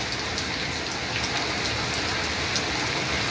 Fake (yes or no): no